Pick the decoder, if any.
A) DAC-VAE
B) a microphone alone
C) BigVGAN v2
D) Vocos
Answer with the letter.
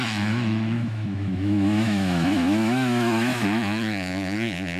A